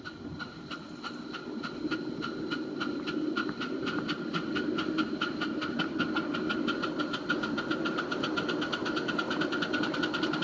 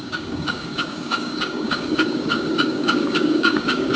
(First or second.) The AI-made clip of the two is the second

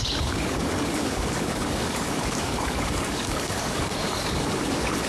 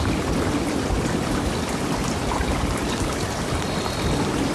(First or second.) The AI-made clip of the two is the first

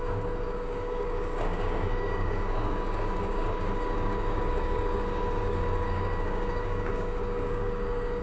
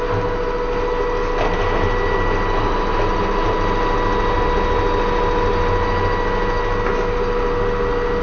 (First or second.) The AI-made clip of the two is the first